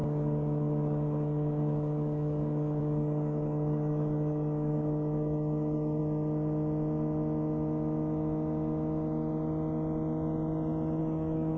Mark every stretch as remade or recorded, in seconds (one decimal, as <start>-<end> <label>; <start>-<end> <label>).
0.0-6.0 remade; 6.0-11.0 recorded; 11.0-11.6 remade